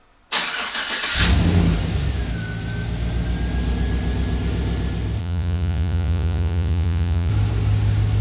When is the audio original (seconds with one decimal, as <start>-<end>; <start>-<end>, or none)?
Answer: 0.0-5.2; 7.3-8.2